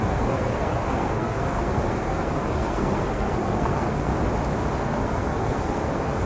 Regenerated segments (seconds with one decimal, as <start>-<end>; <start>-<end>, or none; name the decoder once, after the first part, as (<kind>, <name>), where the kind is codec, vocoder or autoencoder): 0.0-4.1 (codec, SNAC); 4.8-6.3